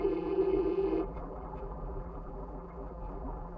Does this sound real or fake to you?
fake